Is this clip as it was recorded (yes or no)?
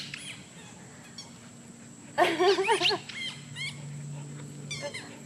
yes